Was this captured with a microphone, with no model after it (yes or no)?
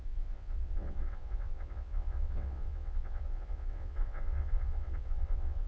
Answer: no